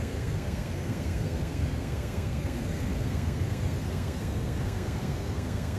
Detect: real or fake fake